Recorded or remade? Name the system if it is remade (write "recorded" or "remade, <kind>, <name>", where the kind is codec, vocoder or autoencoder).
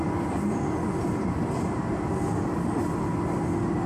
recorded